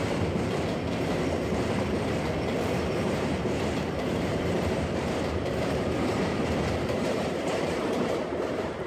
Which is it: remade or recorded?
remade